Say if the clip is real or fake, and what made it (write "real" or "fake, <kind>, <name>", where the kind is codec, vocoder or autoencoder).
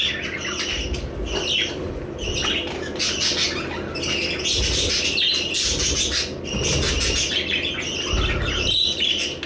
real